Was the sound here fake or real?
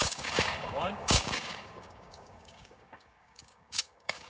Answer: fake